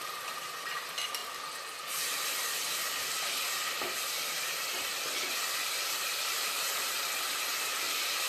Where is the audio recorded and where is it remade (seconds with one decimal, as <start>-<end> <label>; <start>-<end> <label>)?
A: 0.0-1.2 remade; 1.2-6.0 recorded; 6.0-8.3 remade